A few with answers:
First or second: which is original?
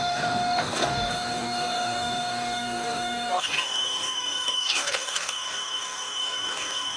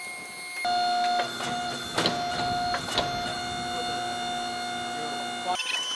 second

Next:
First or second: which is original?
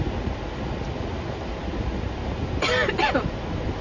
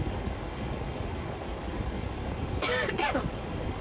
first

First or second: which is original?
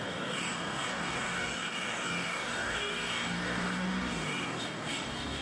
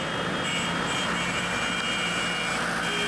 second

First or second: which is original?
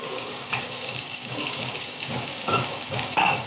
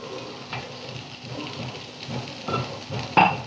second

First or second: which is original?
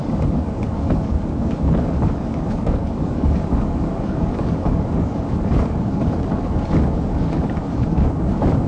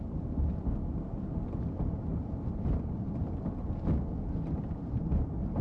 second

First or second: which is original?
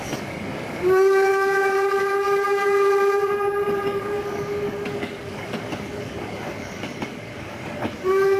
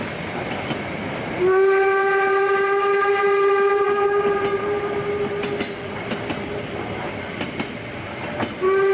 second